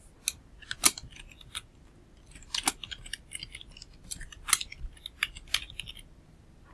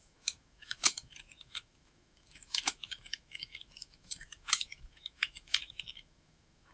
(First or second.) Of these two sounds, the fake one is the second